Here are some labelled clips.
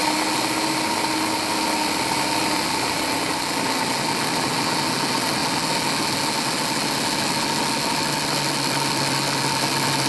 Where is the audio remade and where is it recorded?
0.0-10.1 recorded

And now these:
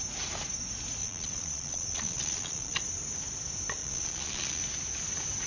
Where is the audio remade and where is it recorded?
0.0-1.0 recorded; 1.0-2.8 remade; 2.8-3.8 recorded; 3.8-4.6 remade; 4.6-5.5 recorded

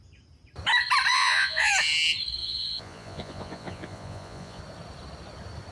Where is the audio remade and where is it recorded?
0.0-1.1 recorded; 1.1-1.7 remade; 1.7-2.4 recorded; 2.4-4.6 remade; 4.6-5.7 recorded

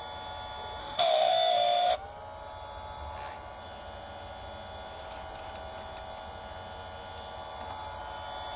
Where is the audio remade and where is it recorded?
0.0-0.8 recorded; 0.8-1.9 remade; 1.9-8.6 recorded

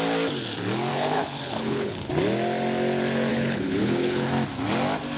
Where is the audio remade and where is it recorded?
0.0-0.9 recorded; 0.9-2.1 remade; 2.1-3.3 recorded; 3.3-4.3 remade; 4.3-5.2 recorded